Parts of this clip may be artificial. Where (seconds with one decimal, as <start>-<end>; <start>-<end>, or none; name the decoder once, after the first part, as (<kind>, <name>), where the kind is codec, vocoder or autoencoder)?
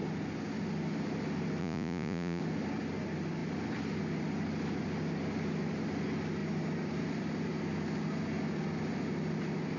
1.6-2.4 (vocoder, Vocos)